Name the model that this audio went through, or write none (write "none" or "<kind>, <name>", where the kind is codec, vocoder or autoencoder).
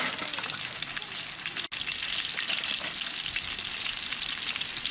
none